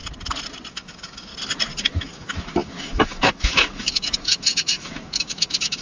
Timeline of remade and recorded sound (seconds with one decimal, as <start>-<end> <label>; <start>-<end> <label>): 0.0-0.7 recorded; 0.7-1.3 remade; 1.3-1.8 recorded; 1.8-5.8 remade